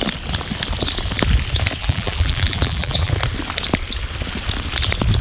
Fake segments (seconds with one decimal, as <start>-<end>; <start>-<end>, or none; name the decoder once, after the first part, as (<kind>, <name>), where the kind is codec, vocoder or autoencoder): 1.8-3.1 (vocoder, BigVGAN v2)